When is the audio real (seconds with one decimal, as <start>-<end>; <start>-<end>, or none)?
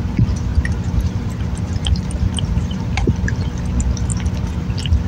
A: 0.0-0.5; 3.6-5.1